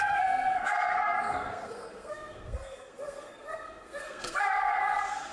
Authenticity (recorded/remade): remade